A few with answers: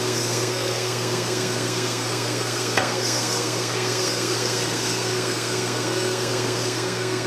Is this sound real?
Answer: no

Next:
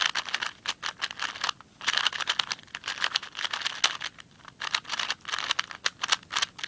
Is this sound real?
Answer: yes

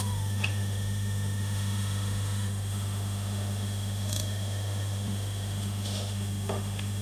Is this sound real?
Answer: no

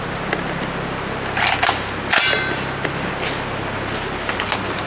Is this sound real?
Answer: yes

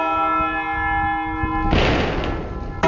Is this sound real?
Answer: yes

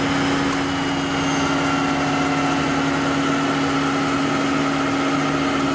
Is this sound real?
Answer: yes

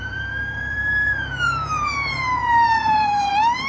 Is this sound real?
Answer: no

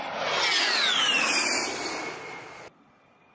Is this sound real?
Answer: yes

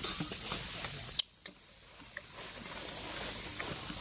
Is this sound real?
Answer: yes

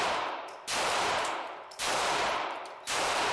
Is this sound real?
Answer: no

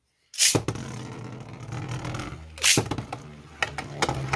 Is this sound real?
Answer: yes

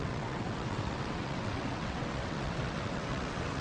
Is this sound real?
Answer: no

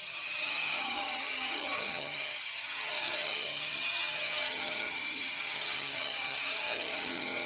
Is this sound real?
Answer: no